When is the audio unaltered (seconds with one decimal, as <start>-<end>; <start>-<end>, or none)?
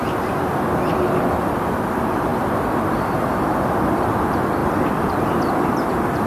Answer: 0.0-6.3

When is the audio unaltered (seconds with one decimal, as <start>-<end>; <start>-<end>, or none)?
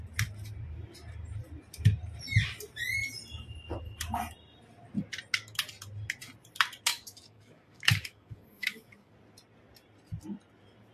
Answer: 0.0-6.9; 9.1-10.9